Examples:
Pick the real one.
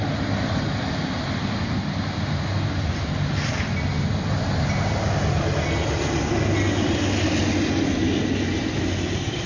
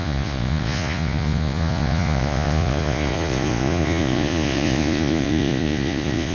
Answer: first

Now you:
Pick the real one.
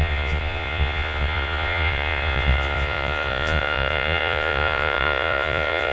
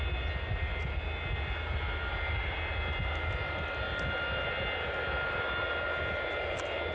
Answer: second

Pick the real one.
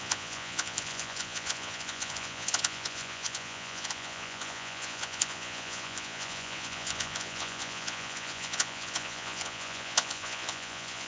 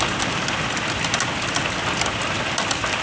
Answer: second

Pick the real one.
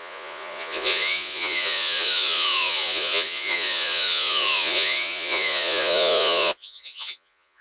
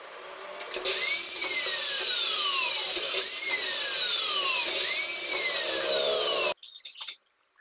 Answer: second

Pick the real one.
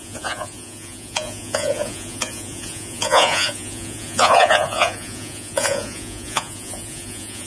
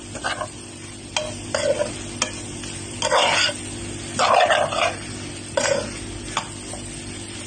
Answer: second